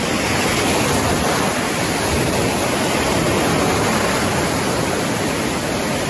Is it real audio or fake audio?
real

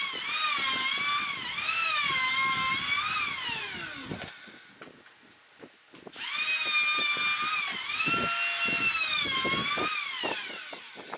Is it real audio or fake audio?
real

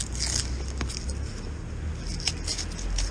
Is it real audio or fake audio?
real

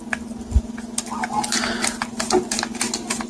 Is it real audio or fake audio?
real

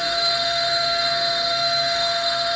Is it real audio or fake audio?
fake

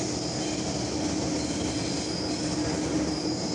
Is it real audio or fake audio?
real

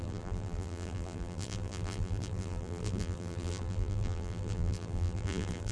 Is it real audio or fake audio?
fake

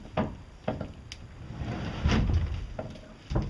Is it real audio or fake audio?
real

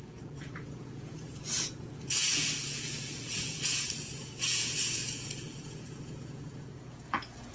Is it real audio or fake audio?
fake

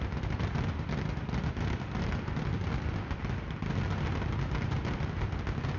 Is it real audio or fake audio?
real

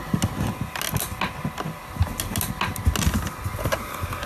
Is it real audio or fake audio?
real